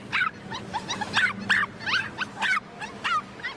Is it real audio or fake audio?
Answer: real